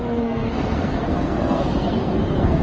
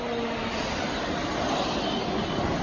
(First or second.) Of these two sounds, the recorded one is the second